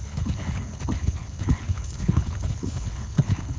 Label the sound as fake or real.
fake